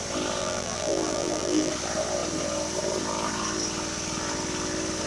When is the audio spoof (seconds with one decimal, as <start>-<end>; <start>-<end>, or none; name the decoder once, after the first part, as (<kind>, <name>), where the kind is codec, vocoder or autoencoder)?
0.4-1.7 (vocoder, BigVGAN v2)

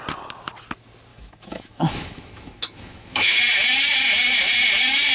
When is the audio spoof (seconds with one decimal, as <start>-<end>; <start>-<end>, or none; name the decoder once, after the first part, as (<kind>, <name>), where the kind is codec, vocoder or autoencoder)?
1.1-3.4 (autoencoder, DAC-VAE)

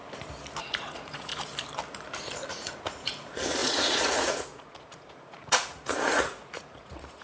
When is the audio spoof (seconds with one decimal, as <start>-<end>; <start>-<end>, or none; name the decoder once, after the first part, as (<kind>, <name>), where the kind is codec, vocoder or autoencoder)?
0.6-1.3 (vocoder, Vocos); 2.5-7.2

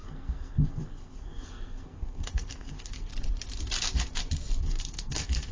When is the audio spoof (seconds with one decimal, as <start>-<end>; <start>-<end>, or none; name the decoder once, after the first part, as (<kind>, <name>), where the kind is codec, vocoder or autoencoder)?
0.0-3.1 (codec, SNAC); 4.6-5.5

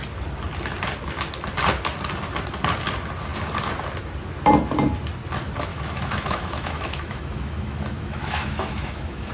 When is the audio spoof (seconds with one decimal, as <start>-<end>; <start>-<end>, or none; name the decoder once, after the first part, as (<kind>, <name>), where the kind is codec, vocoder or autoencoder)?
5.7-9.3 (autoencoder, DAC-VAE)

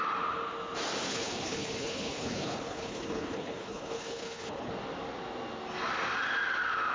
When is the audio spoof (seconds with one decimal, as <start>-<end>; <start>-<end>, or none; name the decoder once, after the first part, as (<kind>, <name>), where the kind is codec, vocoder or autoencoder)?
1.1-4.7 (codec, HILCodec)

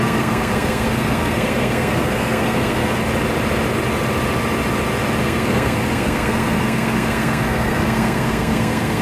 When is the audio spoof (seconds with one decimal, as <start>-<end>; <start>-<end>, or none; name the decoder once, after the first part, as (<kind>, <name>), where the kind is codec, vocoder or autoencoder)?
0.0-3.0 (codec, SNAC); 5.2-9.0

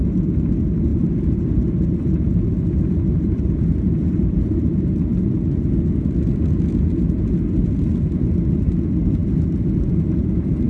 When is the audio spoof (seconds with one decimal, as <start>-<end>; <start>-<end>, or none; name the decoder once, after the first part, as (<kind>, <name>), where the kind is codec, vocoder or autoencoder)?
0.9-4.5 (vocoder, BigVGAN v2)